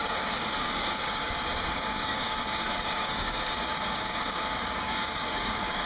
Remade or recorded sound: remade